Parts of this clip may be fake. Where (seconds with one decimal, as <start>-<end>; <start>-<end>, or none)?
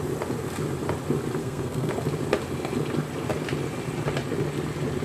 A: 1.4-1.9